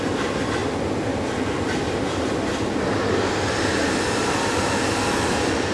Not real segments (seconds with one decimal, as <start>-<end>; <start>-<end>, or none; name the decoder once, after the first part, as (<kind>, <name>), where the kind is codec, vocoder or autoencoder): 0.0-0.6 (vocoder, BigVGAN v2); 4.0-5.7